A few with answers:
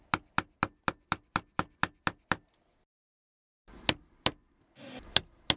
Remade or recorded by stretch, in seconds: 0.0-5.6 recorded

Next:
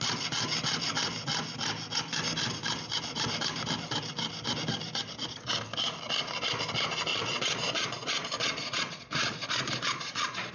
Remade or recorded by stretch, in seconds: 0.0-7.1 recorded; 7.1-10.5 remade

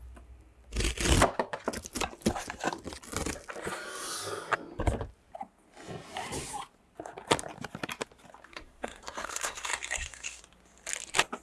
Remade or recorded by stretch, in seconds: 0.0-8.5 recorded; 8.5-10.4 remade; 10.4-11.4 recorded

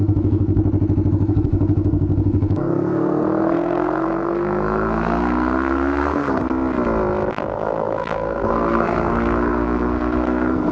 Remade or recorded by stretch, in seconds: 0.0-0.6 remade; 0.6-1.1 recorded; 1.1-6.4 remade; 6.4-7.3 recorded; 7.3-10.7 remade

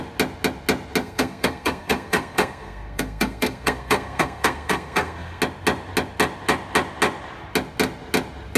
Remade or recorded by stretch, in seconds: 0.0-1.0 recorded; 1.0-5.4 remade; 5.4-8.6 recorded

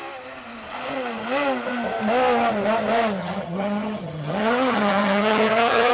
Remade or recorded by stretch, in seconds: 0.0-3.2 recorded; 3.2-5.9 remade

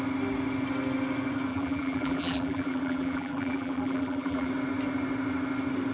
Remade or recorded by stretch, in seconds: 0.0-1.5 recorded; 1.5-4.5 remade; 4.5-5.9 recorded

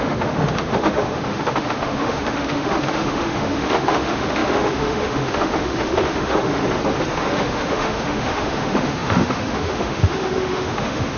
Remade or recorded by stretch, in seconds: 0.0-6.6 remade; 6.6-7.1 recorded; 7.1-11.2 remade